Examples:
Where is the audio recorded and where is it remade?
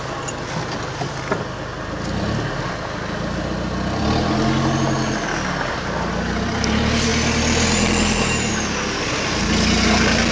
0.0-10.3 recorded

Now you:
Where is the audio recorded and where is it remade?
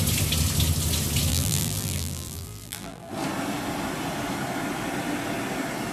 0.0-1.3 recorded; 1.3-3.1 remade; 3.1-5.9 recorded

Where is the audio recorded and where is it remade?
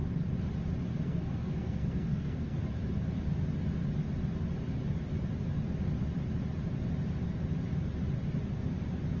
0.0-0.9 recorded; 0.9-2.6 remade; 2.6-9.2 recorded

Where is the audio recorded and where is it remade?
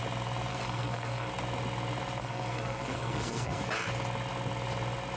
0.0-0.5 recorded; 0.5-1.3 remade; 1.3-2.2 recorded; 2.2-3.6 remade; 3.6-5.2 recorded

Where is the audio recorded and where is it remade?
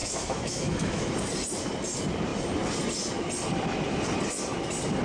0.0-1.1 remade; 1.1-5.0 recorded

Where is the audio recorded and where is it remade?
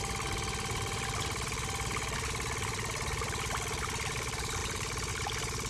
0.0-4.6 recorded; 4.6-5.1 remade; 5.1-5.7 recorded